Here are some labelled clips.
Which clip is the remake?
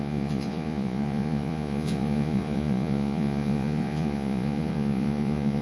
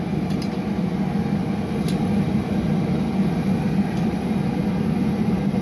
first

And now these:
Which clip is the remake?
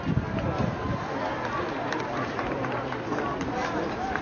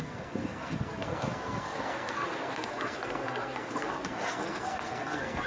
second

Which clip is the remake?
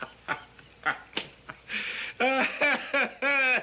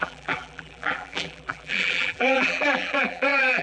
second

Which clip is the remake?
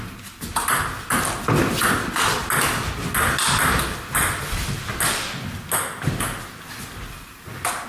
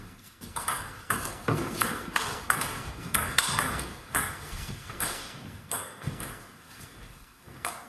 second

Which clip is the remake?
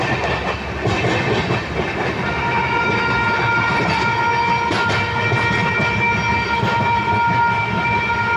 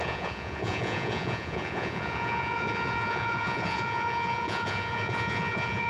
second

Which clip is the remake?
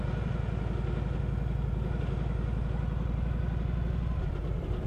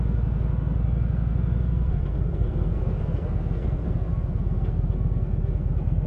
second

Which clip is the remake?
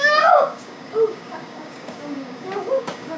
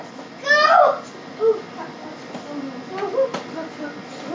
first